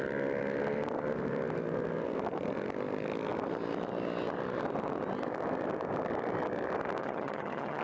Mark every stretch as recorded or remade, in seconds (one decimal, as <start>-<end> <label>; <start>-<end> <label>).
0.0-7.0 recorded; 7.0-7.8 remade